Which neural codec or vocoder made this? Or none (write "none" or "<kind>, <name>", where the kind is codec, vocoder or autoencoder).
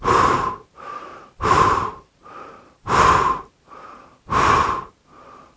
vocoder, BigVGAN v2